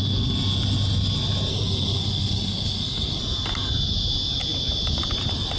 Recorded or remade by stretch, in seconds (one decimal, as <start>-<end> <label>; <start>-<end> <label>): 0.0-1.5 recorded; 1.5-3.2 remade; 3.2-5.6 recorded